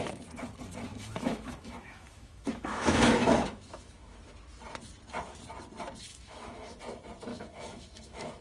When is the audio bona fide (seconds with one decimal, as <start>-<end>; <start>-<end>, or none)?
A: 0.0-0.9; 4.3-6.1; 6.8-7.3